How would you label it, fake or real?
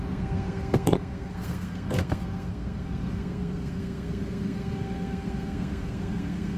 fake